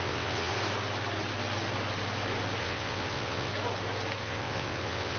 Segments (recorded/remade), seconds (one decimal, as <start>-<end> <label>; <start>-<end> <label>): 0.0-0.5 remade; 0.5-2.6 recorded; 2.6-3.5 remade; 3.5-4.2 recorded; 4.2-5.2 remade